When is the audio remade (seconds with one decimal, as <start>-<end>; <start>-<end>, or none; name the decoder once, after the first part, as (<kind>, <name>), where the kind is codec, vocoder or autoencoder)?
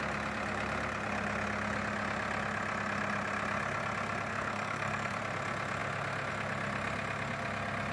4.3-5.2 (codec, SNAC)